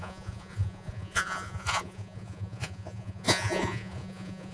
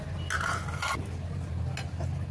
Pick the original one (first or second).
second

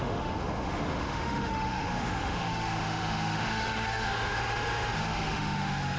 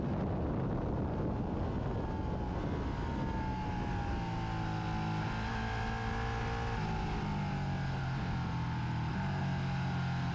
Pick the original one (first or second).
second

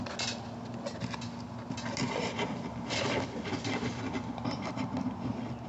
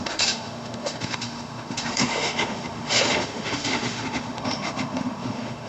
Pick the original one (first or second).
first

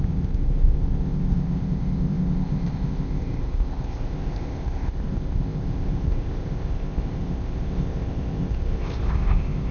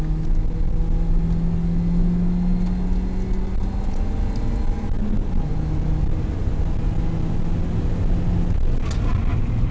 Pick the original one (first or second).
second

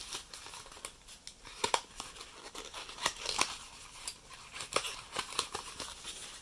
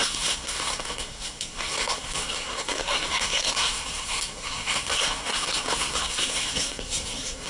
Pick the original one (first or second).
first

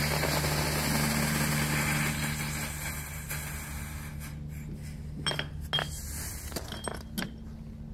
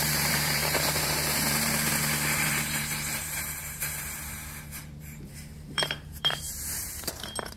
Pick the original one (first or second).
first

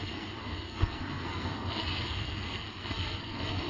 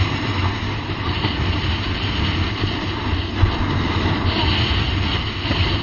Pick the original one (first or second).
second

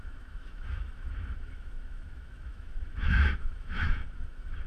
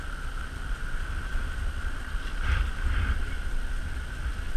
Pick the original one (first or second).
second